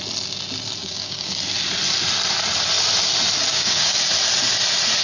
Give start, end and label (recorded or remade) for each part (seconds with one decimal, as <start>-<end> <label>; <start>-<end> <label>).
0.0-0.8 recorded; 0.8-1.4 remade; 1.4-3.5 recorded; 3.5-4.0 remade; 4.0-5.0 recorded